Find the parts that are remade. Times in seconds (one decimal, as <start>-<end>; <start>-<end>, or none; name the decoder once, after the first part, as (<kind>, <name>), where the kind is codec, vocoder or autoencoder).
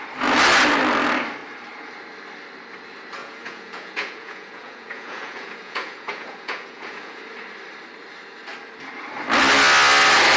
3.2-7.2 (vocoder, Vocos)